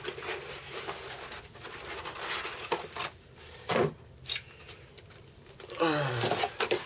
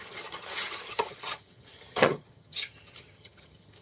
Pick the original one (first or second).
first